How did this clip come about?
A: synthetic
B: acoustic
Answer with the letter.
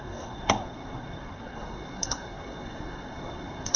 A